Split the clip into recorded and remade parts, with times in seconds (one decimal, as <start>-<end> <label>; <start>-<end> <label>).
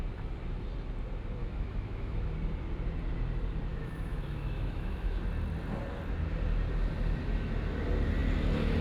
0.0-1.4 recorded; 1.4-2.2 remade; 2.2-3.7 recorded; 3.7-5.2 remade; 5.2-8.8 recorded